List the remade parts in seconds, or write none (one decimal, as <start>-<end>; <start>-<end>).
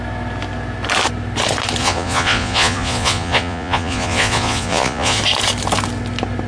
1.8-5.2